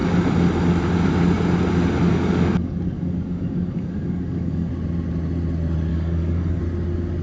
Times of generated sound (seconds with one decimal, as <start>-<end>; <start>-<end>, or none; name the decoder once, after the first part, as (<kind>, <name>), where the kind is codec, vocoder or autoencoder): 2.1-4.7 (codec, DAC); 5.9-6.6